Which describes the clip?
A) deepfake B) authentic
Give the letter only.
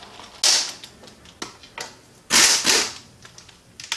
B